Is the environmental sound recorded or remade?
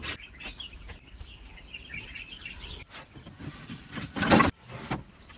recorded